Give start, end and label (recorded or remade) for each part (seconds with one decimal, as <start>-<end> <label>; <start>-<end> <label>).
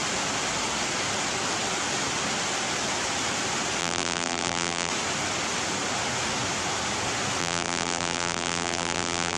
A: 0.0-3.8 recorded; 3.8-4.9 remade; 4.9-7.4 recorded; 7.4-9.4 remade